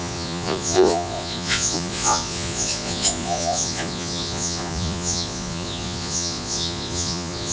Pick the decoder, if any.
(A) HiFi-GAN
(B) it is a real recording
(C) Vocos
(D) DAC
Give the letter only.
C